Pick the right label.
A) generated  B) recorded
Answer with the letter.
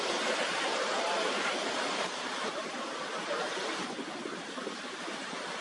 A